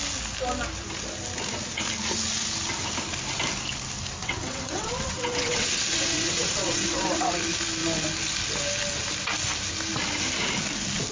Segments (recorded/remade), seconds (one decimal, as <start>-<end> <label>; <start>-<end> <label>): 0.0-4.2 recorded; 4.2-7.3 remade; 7.3-11.1 recorded